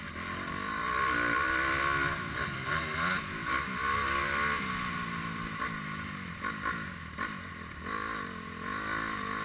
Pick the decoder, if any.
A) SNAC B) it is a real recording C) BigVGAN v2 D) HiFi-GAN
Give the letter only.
B